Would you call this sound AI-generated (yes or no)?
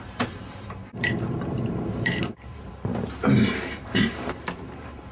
yes